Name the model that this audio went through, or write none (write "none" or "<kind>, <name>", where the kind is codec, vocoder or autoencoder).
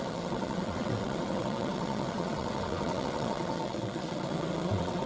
vocoder, WaveNeXt